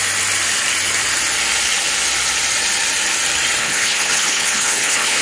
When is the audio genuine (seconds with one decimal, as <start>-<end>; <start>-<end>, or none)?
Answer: 0.0-3.6